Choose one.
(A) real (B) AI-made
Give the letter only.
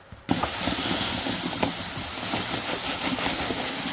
A